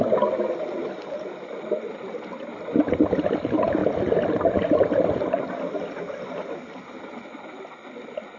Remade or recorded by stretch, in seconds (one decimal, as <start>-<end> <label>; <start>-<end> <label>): 0.0-8.4 recorded